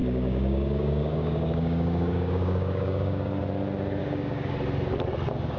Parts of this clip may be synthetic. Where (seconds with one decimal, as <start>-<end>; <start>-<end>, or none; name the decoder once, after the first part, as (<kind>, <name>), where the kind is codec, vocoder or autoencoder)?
0.0-3.4 (codec, DAC); 4.0-4.5